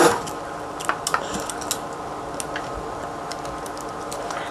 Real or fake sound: real